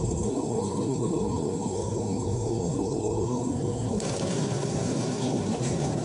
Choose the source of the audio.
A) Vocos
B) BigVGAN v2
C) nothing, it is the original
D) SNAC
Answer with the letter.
D